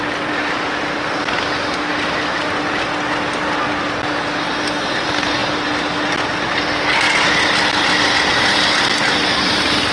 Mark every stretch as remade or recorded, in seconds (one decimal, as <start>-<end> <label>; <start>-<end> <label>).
0.0-9.9 recorded